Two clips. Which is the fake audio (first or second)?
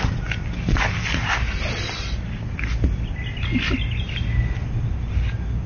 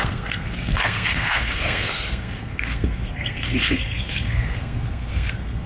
second